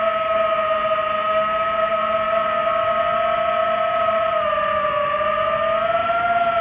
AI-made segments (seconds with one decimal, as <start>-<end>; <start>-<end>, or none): 3.6-5.1; 6.0-6.6